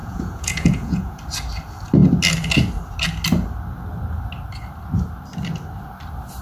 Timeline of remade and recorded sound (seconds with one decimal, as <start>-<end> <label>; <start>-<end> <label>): 0.0-1.2 remade; 1.2-6.4 recorded

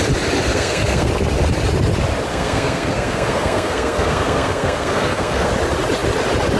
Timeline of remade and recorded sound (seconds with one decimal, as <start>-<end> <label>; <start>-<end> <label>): 0.0-0.5 recorded; 0.5-1.1 remade; 1.1-2.3 recorded; 2.3-5.5 remade; 5.5-6.6 recorded

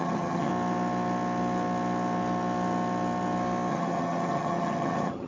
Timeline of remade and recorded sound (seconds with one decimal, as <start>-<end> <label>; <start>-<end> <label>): 0.0-0.5 remade; 0.5-3.7 recorded; 3.7-5.3 remade

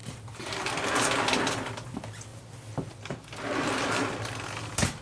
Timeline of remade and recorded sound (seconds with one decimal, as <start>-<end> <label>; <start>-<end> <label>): 0.0-0.7 remade; 0.7-5.0 recorded

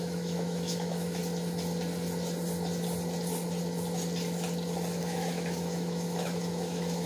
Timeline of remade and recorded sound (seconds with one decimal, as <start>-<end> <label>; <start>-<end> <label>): 0.0-1.2 remade; 1.2-5.0 recorded; 5.0-7.1 remade

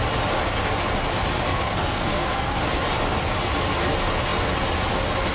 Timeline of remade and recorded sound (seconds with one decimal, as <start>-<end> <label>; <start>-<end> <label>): 0.0-1.5 recorded; 1.5-2.6 remade; 2.6-5.3 recorded

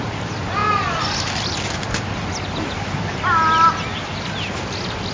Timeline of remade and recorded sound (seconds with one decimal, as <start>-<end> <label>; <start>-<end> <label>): 0.0-0.6 recorded; 0.6-3.7 remade; 3.7-5.1 recorded

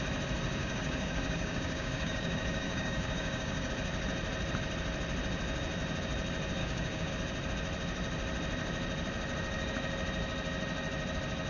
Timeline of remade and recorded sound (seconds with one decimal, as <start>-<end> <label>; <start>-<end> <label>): 0.0-0.6 recorded; 0.6-3.7 remade; 3.7-6.6 recorded; 6.6-7.1 remade; 7.1-11.5 recorded